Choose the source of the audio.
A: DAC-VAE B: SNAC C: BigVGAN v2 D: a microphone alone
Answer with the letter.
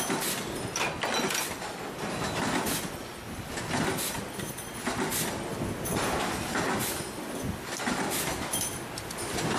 D